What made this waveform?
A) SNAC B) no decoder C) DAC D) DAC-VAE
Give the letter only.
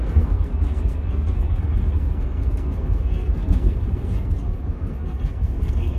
A